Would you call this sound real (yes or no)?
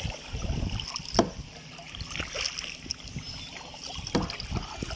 yes